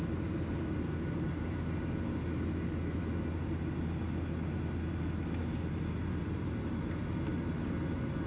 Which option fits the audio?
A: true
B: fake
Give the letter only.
A